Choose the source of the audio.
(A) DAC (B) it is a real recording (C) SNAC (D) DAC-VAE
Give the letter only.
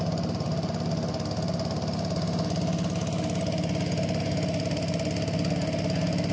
B